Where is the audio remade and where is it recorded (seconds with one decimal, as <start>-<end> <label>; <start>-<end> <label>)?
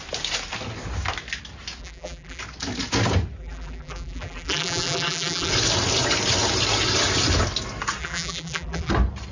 0.0-1.8 recorded; 1.8-2.4 remade; 2.4-3.4 recorded; 3.4-5.5 remade; 5.5-8.0 recorded; 8.0-8.9 remade; 8.9-9.3 recorded